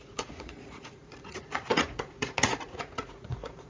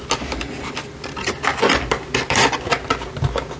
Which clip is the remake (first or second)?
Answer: first